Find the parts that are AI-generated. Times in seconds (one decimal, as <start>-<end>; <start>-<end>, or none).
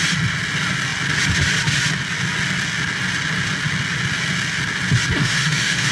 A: 5.2-5.9